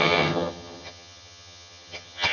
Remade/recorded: remade